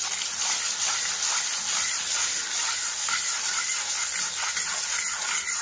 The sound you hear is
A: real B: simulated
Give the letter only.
A